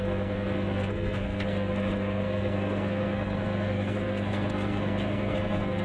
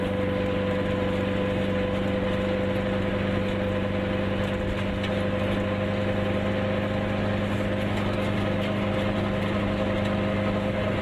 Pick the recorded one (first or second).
second